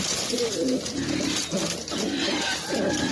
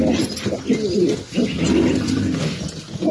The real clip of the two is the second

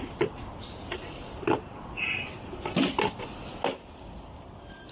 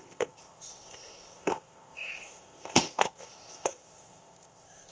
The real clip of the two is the first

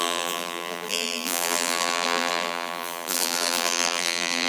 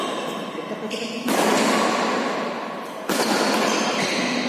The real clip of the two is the second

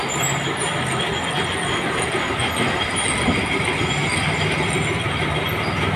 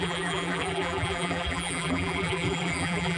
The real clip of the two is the first